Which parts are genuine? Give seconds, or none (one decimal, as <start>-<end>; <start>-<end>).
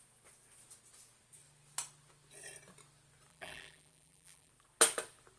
0.0-3.3; 4.5-5.4